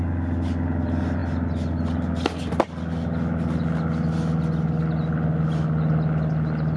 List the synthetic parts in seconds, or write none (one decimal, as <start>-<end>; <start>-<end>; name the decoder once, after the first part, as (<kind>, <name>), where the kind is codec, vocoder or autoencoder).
none